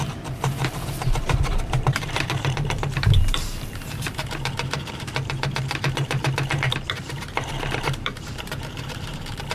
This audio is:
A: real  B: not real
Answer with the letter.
B